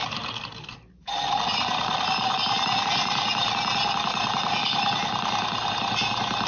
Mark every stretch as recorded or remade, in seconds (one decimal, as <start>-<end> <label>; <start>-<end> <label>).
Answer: 0.0-2.4 remade; 2.4-6.5 recorded